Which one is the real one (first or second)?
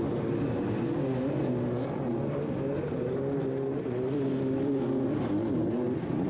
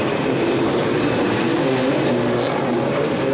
first